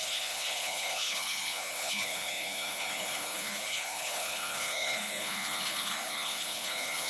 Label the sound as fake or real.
fake